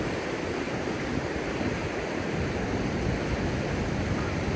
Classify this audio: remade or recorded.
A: recorded